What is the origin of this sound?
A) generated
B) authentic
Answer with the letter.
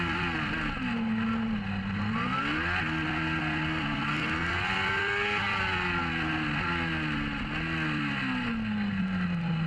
B